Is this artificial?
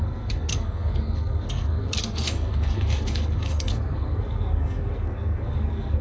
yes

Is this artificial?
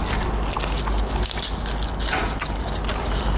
no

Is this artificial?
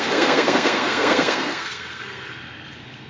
yes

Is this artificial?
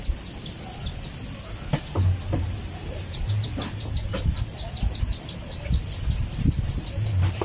no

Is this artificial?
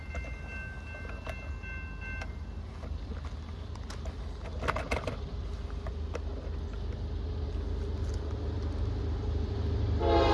no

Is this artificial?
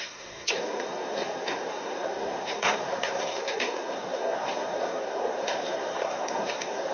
yes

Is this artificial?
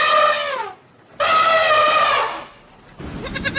no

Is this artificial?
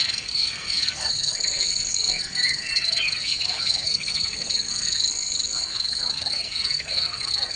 yes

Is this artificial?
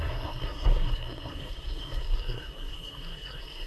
yes